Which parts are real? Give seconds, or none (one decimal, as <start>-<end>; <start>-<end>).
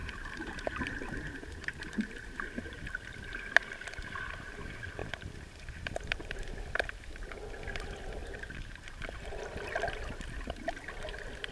3.1-5.0; 7.1-8.2; 9.4-11.5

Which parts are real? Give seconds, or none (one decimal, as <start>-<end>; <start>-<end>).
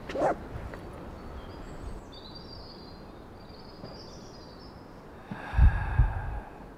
0.0-6.8